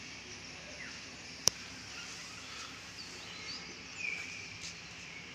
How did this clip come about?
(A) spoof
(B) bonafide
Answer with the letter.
B